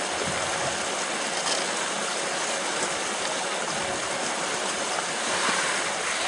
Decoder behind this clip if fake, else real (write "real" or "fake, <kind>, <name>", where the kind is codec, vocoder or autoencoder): real